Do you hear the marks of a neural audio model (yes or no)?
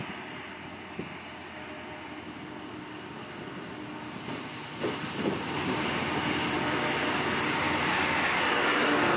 no